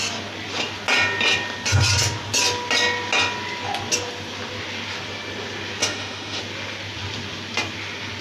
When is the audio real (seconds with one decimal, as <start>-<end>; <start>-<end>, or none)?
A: 0.0-5.8; 6.4-8.2